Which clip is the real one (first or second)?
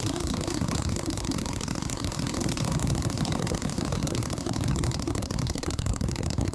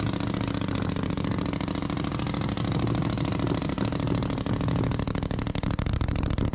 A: second